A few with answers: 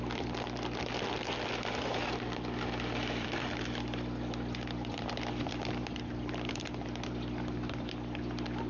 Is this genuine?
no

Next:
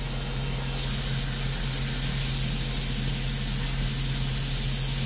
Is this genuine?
yes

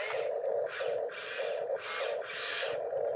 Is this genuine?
yes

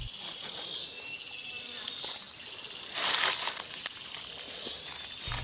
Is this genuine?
yes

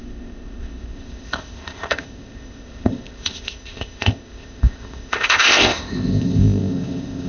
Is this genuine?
no